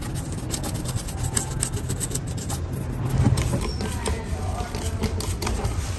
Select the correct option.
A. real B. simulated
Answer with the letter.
A